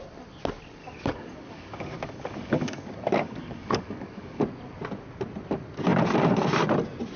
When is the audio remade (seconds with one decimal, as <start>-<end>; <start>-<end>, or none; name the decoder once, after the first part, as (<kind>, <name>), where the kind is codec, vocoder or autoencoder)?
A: 0.8-4.4 (codec, DAC)